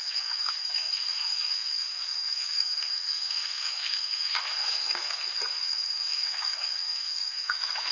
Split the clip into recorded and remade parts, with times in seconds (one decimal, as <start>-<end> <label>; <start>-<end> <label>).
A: 0.0-7.9 remade